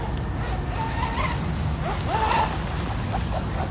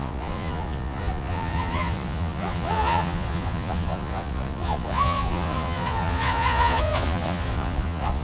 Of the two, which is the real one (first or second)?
first